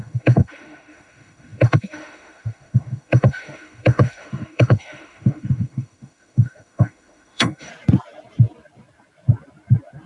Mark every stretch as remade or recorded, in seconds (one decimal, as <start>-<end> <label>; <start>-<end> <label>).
0.0-7.7 remade; 7.7-10.1 recorded